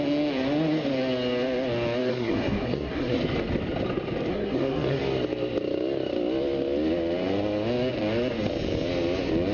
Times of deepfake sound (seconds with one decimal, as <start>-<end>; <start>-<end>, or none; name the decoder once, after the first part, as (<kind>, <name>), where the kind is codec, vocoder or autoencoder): 2.1-3.2 (codec, SNAC); 4.3-5.0